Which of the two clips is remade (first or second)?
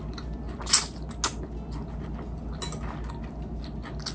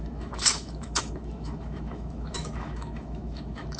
second